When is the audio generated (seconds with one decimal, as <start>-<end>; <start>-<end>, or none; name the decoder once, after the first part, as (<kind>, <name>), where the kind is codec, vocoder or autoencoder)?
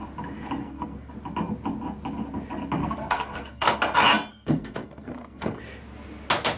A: 0.6-1.1 (codec, SNAC); 2.8-3.8; 4.3-5.6